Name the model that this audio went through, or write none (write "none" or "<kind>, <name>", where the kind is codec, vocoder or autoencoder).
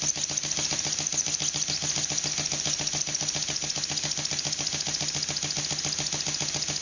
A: none